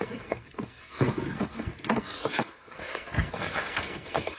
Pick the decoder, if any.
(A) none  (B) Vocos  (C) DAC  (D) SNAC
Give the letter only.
D